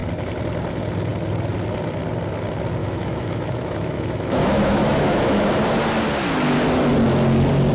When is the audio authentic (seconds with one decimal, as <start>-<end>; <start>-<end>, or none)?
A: 0.0-2.8; 5.5-7.7